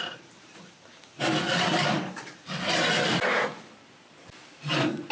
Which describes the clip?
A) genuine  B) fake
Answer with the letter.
B